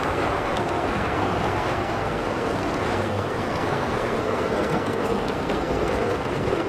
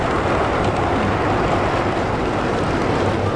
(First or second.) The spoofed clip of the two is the first